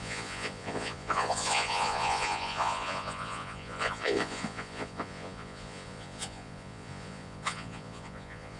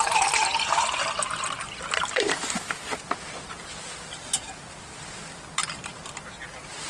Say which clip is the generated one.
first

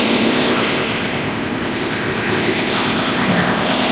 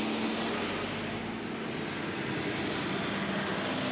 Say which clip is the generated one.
first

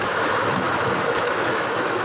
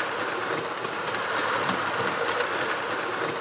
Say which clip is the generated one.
first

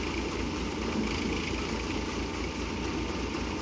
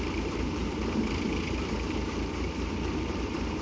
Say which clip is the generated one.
second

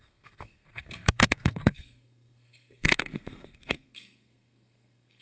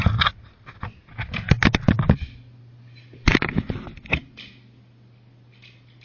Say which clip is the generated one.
first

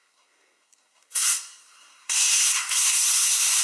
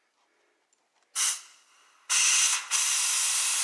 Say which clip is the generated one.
first